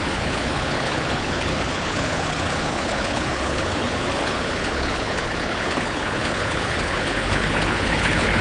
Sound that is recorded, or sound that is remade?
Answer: remade